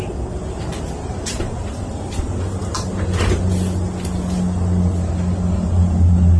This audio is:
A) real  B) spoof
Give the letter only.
A